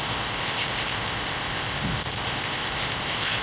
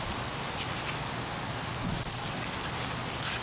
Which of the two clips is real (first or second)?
second